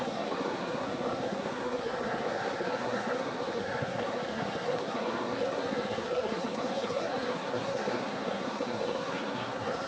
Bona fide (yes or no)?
no